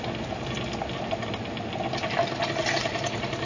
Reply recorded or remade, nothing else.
recorded